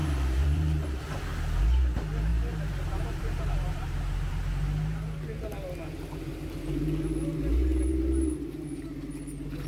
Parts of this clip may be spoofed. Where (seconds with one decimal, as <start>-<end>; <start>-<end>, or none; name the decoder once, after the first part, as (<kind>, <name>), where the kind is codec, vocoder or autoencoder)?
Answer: 0.0-1.2 (vocoder, BigVGAN v2); 2.3-4.3; 6.3-9.1